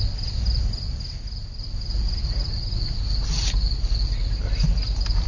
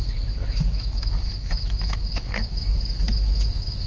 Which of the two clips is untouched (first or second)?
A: first